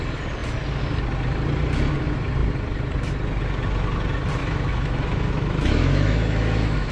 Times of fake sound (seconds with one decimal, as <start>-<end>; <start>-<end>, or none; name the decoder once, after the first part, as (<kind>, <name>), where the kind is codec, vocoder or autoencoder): 4.4-6.9 (autoencoder, DAC-VAE)